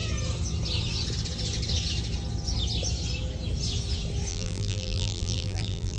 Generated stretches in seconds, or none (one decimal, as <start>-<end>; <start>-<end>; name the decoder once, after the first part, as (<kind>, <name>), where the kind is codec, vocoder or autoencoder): 4.3-6.0 (vocoder, BigVGAN v2)

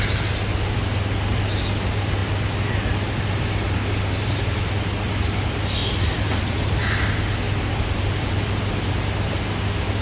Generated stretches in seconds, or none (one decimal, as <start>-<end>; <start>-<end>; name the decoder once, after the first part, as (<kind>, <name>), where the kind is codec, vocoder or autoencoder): 5.8-8.9 (vocoder, BigVGAN v2)

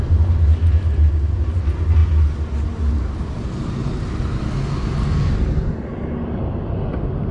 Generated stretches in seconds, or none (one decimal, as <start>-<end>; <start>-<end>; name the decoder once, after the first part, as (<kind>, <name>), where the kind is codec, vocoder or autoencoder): none

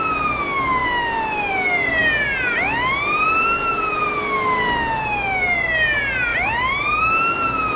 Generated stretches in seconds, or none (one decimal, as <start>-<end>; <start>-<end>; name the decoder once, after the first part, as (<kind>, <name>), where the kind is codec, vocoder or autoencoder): 6.3-7.0 (vocoder, BigVGAN v2)

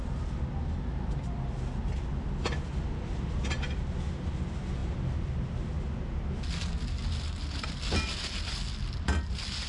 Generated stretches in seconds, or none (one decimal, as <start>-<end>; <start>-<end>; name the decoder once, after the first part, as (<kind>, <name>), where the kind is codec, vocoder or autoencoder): none

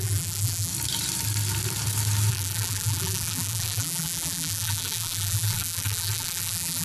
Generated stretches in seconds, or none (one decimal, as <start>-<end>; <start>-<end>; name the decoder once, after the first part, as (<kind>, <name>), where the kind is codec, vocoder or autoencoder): 0.0-0.7 (vocoder, BigVGAN v2); 2.3-6.8

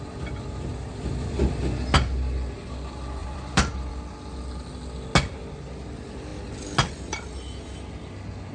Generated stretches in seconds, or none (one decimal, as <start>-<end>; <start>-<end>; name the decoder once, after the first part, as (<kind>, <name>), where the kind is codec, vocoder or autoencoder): 0.7-1.4 (vocoder, BigVGAN v2); 3.2-3.9

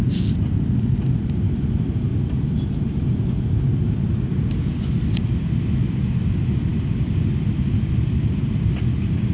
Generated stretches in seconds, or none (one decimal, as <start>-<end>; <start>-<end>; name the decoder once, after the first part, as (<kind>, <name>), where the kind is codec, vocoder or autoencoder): 2.1-3.7 (vocoder, BigVGAN v2)